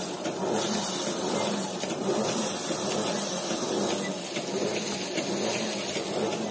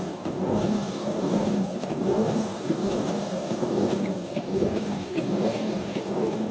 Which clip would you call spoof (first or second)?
second